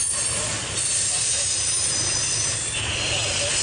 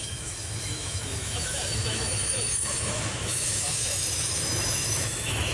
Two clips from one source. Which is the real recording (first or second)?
first